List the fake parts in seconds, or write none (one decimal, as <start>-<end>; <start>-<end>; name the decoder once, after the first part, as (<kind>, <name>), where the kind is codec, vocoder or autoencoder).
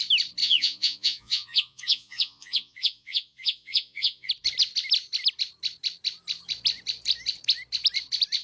0.4-4.3 (vocoder, Vocos)